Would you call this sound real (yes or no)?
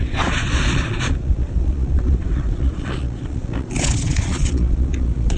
no